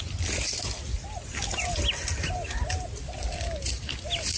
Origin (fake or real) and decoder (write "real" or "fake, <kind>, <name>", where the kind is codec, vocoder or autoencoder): real